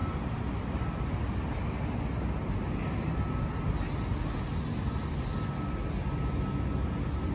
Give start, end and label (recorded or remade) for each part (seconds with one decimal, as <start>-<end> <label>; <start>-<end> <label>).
0.0-7.3 recorded